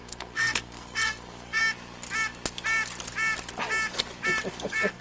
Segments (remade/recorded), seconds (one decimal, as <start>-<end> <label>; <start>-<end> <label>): 0.0-1.6 remade; 1.6-4.6 recorded; 4.6-5.0 remade

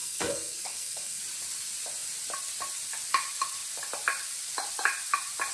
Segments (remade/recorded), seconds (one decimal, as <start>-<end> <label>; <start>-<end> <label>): 0.0-1.2 remade; 1.2-5.5 recorded

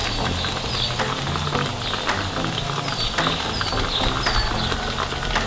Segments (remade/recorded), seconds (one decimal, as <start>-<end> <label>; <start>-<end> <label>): 0.0-5.5 recorded

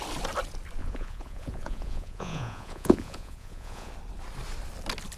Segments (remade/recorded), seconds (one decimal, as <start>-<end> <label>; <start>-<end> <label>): 0.0-0.8 recorded; 0.8-3.9 remade; 3.9-5.2 recorded

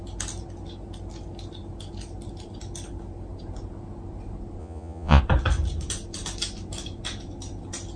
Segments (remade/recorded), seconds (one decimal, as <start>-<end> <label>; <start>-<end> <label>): 0.0-4.6 recorded; 4.6-5.2 remade; 5.2-8.0 recorded